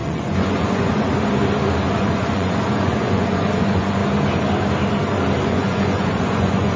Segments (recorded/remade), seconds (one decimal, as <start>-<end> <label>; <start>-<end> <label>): 0.0-1.1 remade; 1.1-1.9 recorded; 1.9-4.0 remade; 4.0-5.4 recorded; 5.4-6.8 remade